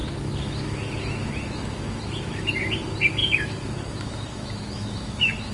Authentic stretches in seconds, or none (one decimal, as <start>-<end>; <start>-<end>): 2.6-3.2